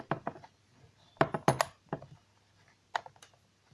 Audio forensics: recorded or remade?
recorded